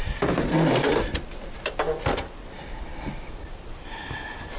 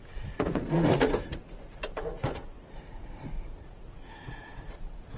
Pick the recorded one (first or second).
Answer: first